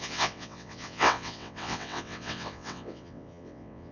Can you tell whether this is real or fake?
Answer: fake